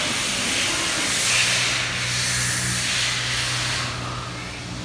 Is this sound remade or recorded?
recorded